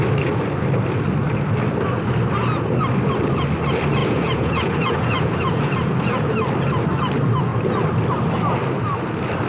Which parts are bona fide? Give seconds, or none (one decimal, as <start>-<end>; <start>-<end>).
0.0-4.0; 6.3-9.5